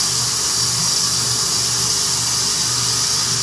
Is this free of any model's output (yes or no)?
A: yes